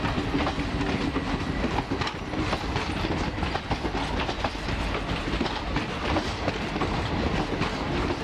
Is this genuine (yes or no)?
yes